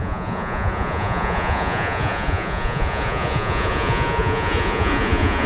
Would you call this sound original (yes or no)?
no